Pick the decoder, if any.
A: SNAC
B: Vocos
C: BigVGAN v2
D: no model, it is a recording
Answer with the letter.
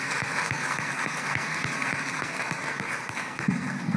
A